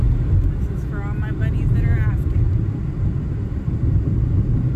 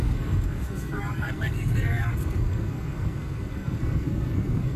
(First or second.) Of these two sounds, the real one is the first